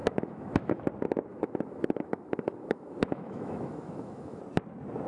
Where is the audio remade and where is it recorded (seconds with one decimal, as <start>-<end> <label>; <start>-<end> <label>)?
0.0-0.8 remade; 0.8-1.3 recorded; 1.3-4.4 remade; 4.4-5.1 recorded